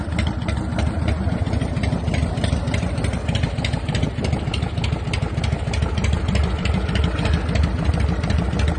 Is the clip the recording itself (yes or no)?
no